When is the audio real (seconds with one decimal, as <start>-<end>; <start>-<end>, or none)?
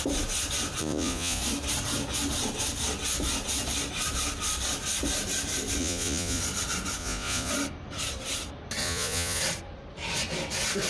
0.0-0.8; 1.4-5.8; 6.4-7.0; 7.5-8.8; 9.4-10.9